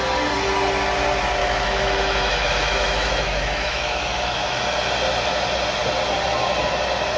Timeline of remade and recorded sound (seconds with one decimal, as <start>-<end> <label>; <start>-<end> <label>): 0.0-1.4 recorded; 1.4-4.6 remade; 4.6-7.2 recorded